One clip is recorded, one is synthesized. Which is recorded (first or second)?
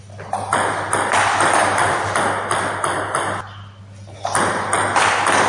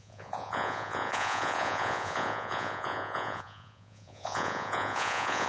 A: first